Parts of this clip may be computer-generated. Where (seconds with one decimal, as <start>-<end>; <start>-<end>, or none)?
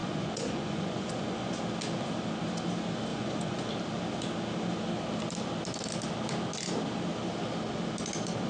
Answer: 0.0-1.5; 3.1-3.7